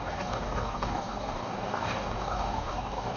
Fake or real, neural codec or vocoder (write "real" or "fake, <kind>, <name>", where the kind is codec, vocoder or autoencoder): fake, codec, DAC